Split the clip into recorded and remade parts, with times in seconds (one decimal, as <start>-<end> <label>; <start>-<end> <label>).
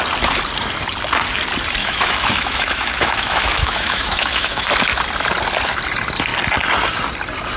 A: 0.0-1.8 recorded; 1.8-4.7 remade; 4.7-7.6 recorded